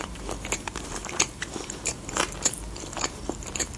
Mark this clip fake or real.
fake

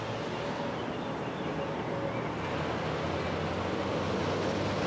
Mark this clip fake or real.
real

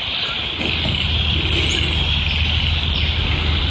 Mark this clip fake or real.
real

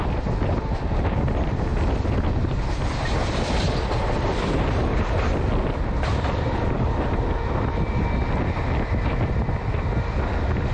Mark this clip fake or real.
real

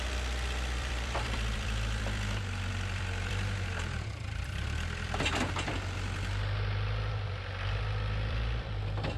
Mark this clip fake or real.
fake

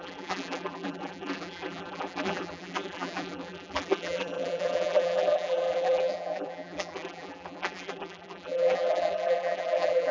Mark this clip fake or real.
fake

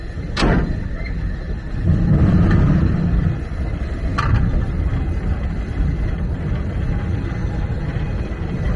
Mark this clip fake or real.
real